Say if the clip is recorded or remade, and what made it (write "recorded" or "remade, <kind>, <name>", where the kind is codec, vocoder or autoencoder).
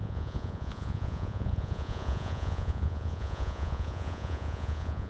remade, vocoder, Vocos